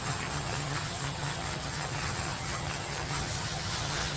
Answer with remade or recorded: remade